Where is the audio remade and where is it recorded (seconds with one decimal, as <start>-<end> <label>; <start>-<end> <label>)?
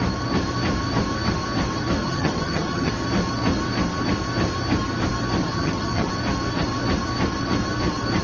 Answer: 0.0-2.0 recorded; 2.0-2.9 remade; 2.9-5.4 recorded; 5.4-6.1 remade; 6.1-8.2 recorded